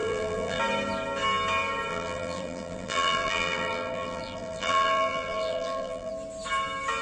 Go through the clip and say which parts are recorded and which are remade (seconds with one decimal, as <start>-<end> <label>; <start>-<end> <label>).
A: 0.0-0.6 remade; 0.6-1.9 recorded; 1.9-6.1 remade; 6.1-7.0 recorded